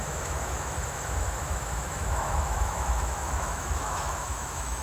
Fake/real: fake